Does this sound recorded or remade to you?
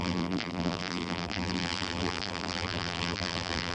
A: remade